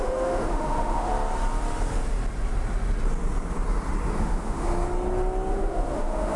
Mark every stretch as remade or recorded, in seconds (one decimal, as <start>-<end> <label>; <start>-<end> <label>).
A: 0.0-1.1 remade; 1.1-4.2 recorded; 4.2-4.7 remade; 4.7-5.5 recorded; 5.5-6.4 remade